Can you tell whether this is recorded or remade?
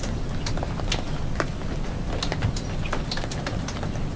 recorded